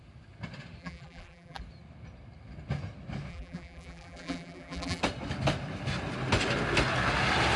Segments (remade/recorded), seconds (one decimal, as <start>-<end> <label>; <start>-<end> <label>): 0.0-0.8 recorded; 0.8-1.6 remade; 1.6-3.3 recorded; 3.3-5.0 remade; 5.0-7.6 recorded